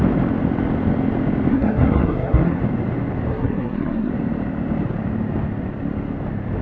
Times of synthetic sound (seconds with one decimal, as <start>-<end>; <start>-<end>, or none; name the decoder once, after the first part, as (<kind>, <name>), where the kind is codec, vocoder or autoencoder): 1.5-2.6 (codec, SNAC); 3.3-4.1